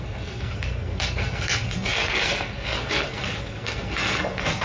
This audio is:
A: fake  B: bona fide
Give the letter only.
A